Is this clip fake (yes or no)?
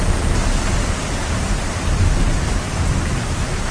yes